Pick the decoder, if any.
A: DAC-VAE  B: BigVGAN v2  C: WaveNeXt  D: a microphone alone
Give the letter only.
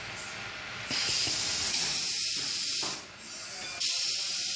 D